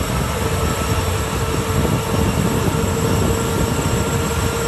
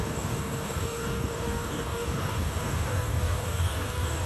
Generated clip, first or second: second